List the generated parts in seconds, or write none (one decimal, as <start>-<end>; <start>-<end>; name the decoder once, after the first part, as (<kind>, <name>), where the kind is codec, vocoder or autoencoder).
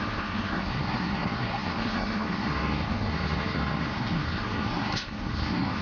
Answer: 0.0-5.8 (codec, SNAC)